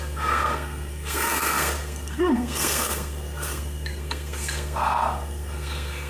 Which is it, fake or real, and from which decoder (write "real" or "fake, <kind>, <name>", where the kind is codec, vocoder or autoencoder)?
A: fake, codec, SNAC